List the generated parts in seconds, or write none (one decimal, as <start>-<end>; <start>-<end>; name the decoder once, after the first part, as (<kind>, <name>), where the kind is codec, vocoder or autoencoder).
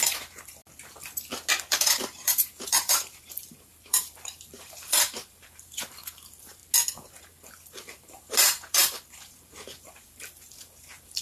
0.0-0.6 (vocoder, BigVGAN v2); 1.5-6.6; 7.2-11.2